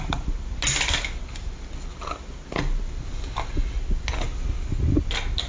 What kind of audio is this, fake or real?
real